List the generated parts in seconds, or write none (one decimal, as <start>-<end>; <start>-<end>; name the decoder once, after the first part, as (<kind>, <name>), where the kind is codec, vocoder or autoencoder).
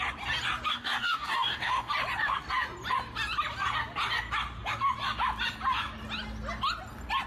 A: 0.7-1.9 (codec, DAC)